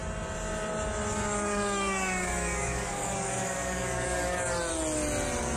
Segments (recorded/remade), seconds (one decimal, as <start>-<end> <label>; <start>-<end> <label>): 0.0-1.1 recorded; 1.1-4.5 remade; 4.5-5.6 recorded